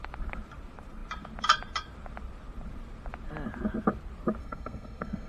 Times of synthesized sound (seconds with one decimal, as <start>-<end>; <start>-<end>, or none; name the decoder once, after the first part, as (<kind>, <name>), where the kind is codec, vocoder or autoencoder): 4.4-5.3 (codec, SNAC)